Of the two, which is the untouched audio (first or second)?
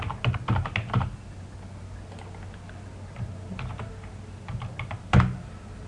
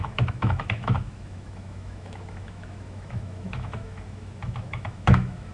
first